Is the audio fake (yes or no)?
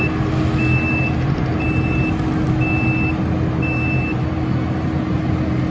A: no